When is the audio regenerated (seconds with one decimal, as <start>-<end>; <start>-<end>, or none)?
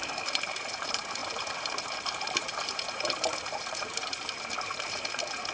0.0-5.5